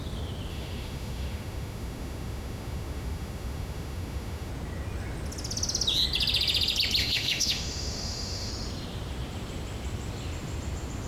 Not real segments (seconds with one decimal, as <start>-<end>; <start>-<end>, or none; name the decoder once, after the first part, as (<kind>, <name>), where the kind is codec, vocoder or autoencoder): 0.5-4.5 (autoencoder, DAC-VAE); 7.0-8.5